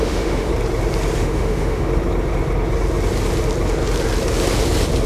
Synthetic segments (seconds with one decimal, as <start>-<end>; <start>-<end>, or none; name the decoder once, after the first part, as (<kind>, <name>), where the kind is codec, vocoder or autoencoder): 0.0-0.5 (autoencoder, DAC-VAE); 1.2-1.9